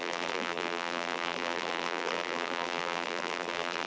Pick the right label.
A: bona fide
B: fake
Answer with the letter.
B